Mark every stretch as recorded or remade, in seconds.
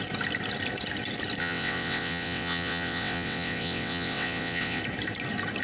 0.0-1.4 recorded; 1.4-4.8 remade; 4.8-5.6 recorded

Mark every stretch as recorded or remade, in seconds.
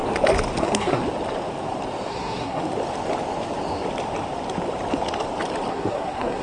0.0-0.6 recorded; 0.6-1.0 remade; 1.0-2.1 recorded; 2.1-2.6 remade; 2.6-5.7 recorded; 5.7-6.4 remade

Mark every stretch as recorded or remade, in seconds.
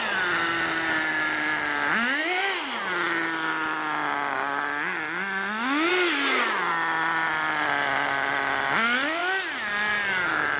0.0-10.6 recorded